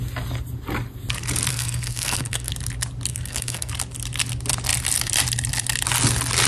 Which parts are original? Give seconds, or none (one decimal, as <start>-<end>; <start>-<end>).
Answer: 0.0-1.5; 2.5-3.1; 3.7-6.5